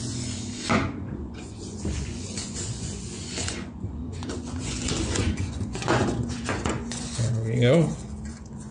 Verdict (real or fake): fake